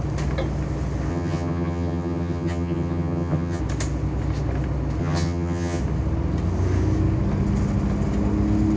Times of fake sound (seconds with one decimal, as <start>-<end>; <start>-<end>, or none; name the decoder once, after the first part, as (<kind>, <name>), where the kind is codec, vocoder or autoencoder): 1.1-3.6 (vocoder, HiFi-GAN); 5.0-5.8